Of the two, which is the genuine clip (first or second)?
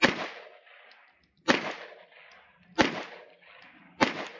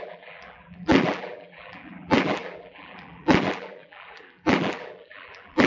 first